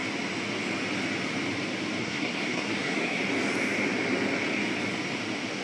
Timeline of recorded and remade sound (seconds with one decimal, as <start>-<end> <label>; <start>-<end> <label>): 0.0-2.0 recorded; 2.0-3.2 remade; 3.2-5.6 recorded